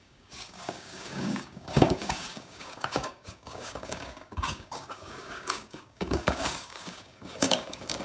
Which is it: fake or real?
fake